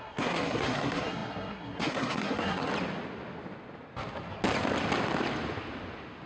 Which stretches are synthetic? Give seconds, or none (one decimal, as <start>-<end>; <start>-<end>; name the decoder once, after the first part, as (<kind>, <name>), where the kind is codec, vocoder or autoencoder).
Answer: 0.0-2.7 (codec, SNAC)